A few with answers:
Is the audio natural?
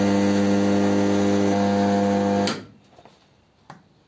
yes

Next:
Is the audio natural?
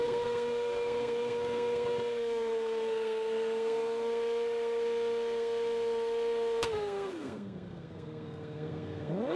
no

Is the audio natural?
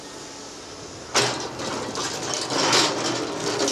yes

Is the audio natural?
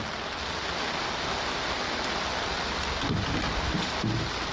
yes